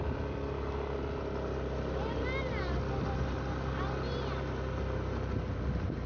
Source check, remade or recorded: recorded